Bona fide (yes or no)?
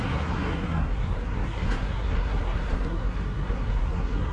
no